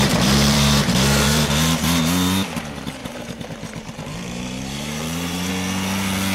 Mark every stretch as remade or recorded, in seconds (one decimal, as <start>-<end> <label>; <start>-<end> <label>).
0.0-2.0 remade; 2.0-3.0 recorded; 3.0-5.5 remade; 5.5-6.3 recorded